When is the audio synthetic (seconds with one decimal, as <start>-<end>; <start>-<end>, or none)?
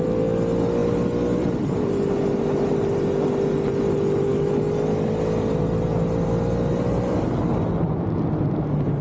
none